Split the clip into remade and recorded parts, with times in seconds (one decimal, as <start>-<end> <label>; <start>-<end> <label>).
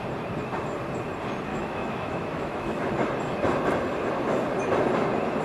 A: 0.0-1.5 recorded; 1.5-2.9 remade; 2.9-5.4 recorded